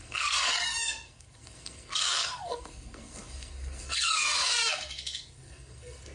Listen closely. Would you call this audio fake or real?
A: fake